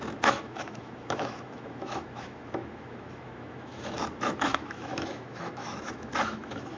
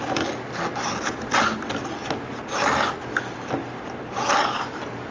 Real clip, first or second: second